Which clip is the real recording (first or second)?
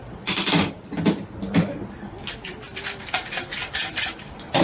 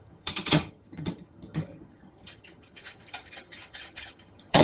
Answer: first